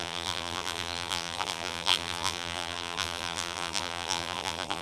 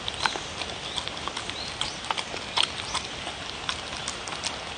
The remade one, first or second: first